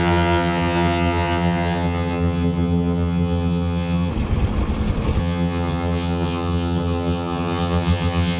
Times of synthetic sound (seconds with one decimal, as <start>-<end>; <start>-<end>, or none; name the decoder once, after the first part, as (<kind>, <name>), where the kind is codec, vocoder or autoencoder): 0.0-4.1 (vocoder, HiFi-GAN); 5.2-8.4